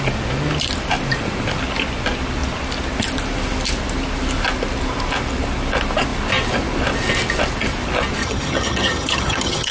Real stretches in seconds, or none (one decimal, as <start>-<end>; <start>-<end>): 0.0-8.2